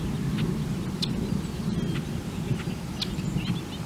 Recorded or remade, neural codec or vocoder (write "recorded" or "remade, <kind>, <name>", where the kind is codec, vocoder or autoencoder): recorded